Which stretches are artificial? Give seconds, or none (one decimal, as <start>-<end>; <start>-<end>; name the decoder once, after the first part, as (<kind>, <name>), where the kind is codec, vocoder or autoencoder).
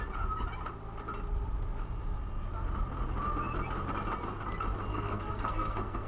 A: 4.9-6.1 (codec, SNAC)